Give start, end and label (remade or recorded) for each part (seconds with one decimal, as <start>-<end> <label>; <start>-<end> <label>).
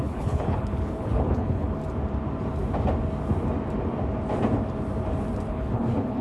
0.0-1.8 remade; 1.8-5.5 recorded; 5.5-6.2 remade